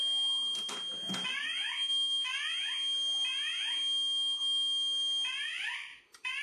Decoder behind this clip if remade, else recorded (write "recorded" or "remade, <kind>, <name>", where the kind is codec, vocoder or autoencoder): recorded